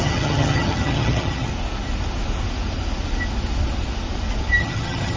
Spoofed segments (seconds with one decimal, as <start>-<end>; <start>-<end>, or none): 0.0-1.5; 4.6-5.2